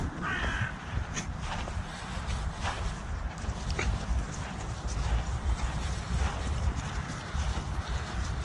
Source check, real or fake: fake